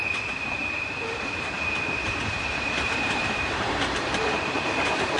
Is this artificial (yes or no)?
yes